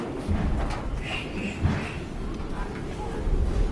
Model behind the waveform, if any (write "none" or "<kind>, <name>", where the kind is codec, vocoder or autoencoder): none